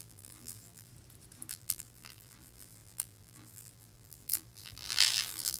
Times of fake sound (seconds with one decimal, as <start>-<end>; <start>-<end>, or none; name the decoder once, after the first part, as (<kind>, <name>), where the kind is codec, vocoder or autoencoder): 0.0-0.9 (vocoder, BigVGAN v2); 1.5-5.6